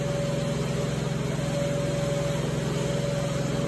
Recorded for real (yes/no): yes